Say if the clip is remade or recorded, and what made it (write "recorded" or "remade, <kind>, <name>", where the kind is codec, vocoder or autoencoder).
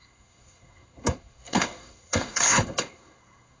remade, codec, SNAC